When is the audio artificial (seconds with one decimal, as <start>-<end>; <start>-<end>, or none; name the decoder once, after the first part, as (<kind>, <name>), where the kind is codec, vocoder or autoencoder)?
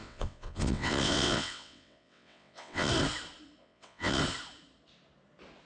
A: 0.0-2.9 (vocoder, WaveNeXt); 3.6-4.2